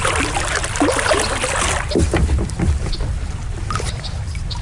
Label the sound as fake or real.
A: fake